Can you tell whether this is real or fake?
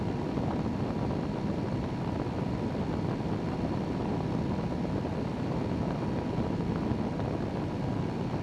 real